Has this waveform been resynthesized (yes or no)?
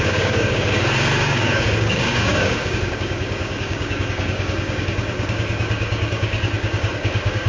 yes